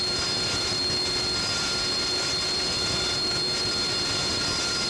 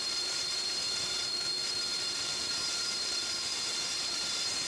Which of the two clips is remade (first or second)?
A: second